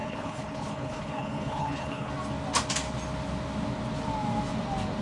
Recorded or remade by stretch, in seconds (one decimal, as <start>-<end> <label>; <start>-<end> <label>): 0.0-2.1 remade; 2.1-5.0 recorded